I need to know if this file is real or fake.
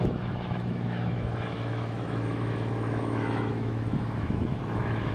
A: fake